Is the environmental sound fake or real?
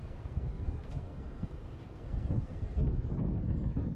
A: fake